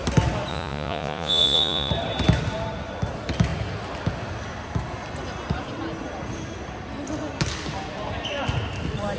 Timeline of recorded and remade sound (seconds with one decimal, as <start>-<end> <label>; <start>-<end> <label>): 0.0-0.5 recorded; 0.5-1.9 remade; 1.9-9.2 recorded

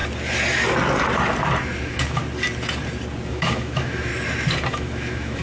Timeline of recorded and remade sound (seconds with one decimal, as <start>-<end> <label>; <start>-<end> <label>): 0.0-1.8 recorded; 1.8-2.2 remade; 2.2-3.3 recorded; 3.3-4.1 remade; 4.1-4.7 recorded; 4.7-5.4 remade

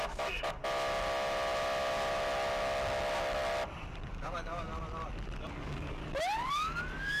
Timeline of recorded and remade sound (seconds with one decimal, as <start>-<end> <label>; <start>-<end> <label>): 0.0-0.6 remade; 0.6-4.1 recorded; 4.1-4.7 remade; 4.7-5.5 recorded; 5.5-6.0 remade; 6.0-6.5 recorded; 6.5-7.2 remade

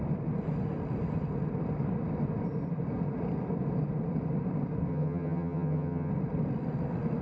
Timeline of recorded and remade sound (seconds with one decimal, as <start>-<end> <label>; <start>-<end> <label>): 0.0-4.9 recorded; 4.9-6.1 remade; 6.1-7.2 recorded

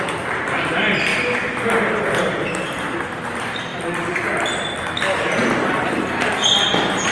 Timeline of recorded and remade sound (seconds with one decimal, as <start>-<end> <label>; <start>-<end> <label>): 0.0-3.7 recorded; 3.7-4.8 remade; 4.8-7.1 recorded